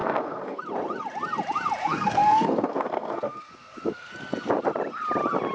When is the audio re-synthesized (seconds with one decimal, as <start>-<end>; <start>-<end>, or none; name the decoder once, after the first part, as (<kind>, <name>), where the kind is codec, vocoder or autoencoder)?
0.0-0.6 (codec, SNAC); 1.8-4.1